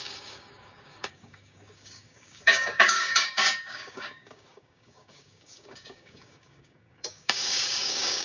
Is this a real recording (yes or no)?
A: no